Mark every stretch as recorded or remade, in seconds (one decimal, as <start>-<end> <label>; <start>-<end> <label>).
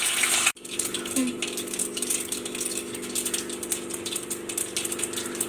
0.0-0.5 recorded; 0.5-3.1 remade; 3.1-5.5 recorded